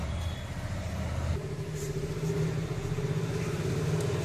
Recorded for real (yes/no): yes